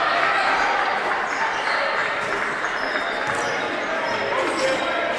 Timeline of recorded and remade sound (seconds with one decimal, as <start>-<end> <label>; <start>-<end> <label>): 0.0-0.9 recorded; 0.9-1.6 remade; 1.6-5.2 recorded